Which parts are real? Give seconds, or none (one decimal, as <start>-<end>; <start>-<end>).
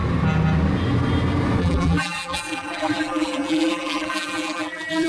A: 0.0-1.6